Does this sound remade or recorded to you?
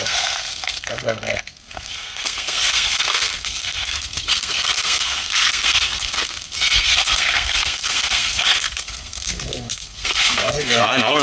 remade